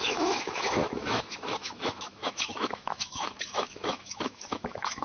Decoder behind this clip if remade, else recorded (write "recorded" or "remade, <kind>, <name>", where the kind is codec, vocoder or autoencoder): remade, autoencoder, DAC-VAE